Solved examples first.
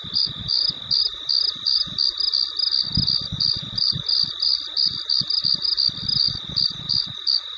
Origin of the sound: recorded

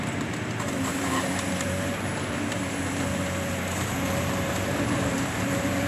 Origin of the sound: remade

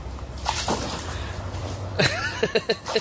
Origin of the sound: recorded